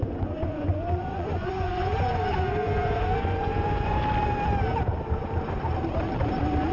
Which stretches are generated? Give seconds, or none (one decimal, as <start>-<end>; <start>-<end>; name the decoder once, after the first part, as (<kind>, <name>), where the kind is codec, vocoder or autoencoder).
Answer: 0.0-4.0 (vocoder, Vocos)